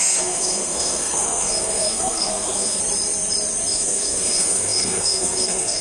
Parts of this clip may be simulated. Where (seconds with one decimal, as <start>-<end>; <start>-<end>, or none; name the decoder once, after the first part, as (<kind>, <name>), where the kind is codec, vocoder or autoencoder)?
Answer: 0.0-2.8 (codec, SNAC); 3.7-5.8